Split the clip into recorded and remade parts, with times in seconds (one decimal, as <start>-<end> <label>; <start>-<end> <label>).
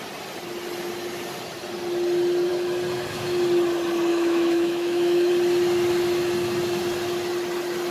0.0-4.1 recorded; 4.1-5.3 remade; 5.3-7.9 recorded